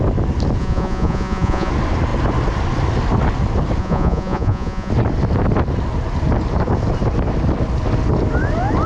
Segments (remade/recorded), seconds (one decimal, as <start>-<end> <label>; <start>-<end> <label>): 0.0-0.6 recorded; 0.6-1.7 remade; 1.7-3.8 recorded; 3.8-4.9 remade; 4.9-8.9 recorded